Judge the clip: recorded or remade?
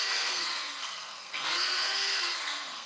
remade